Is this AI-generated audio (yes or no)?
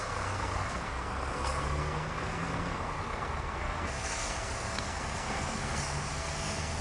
yes